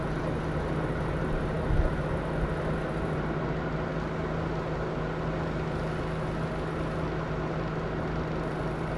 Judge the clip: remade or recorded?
recorded